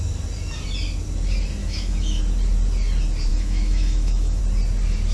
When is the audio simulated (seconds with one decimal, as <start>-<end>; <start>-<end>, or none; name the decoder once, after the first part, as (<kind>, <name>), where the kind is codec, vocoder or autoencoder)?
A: 1.6-2.2 (autoencoder, DAC-VAE); 3.3-4.4